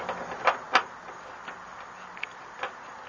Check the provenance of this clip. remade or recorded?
recorded